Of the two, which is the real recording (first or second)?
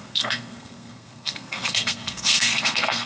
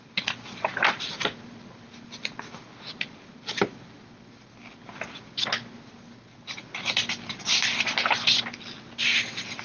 second